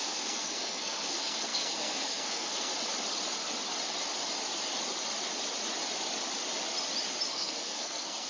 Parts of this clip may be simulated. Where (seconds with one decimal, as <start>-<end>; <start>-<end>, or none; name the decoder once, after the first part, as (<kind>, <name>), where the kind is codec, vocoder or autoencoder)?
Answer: 0.0-2.7 (codec, SNAC); 7.3-8.3